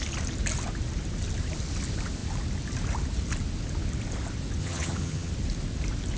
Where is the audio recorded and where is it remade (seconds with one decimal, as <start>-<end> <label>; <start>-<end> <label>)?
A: 0.0-4.6 recorded; 4.6-5.3 remade; 5.3-6.2 recorded